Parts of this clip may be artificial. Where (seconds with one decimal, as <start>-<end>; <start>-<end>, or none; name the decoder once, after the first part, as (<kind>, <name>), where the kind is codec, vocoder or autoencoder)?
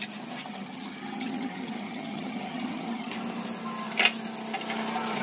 0.4-3.1 (vocoder, HiFi-GAN)